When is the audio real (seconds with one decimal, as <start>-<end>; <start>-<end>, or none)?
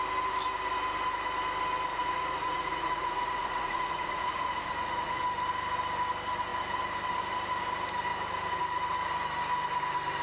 0.0-1.9; 5.2-10.2